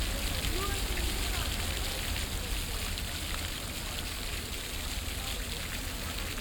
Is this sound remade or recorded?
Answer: recorded